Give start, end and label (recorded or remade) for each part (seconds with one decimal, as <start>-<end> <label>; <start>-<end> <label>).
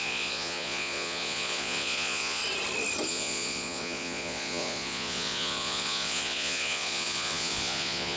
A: 0.0-2.4 remade; 2.4-3.1 recorded; 3.1-8.2 remade